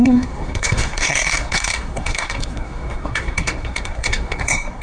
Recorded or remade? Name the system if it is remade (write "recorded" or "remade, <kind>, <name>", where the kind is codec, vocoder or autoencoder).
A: remade, codec, SNAC